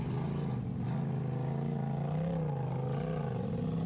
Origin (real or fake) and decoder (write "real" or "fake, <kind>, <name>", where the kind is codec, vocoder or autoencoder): real